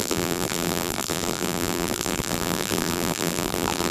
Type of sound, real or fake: fake